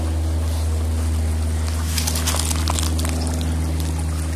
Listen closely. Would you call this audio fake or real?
real